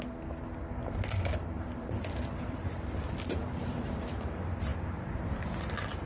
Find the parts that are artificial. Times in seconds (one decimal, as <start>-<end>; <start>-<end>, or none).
1.4-3.0; 4.7-5.4